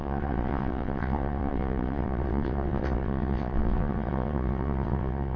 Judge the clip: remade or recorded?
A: remade